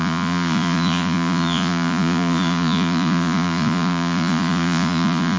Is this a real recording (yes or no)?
no